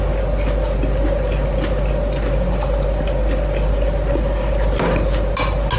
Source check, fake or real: real